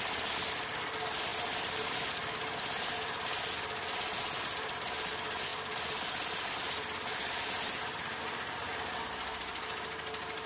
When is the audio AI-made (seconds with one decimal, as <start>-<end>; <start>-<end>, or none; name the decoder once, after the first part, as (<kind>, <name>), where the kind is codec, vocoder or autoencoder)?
none